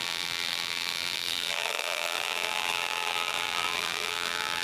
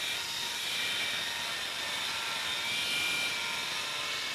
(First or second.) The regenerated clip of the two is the first